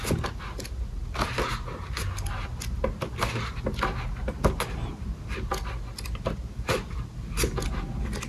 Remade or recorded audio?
recorded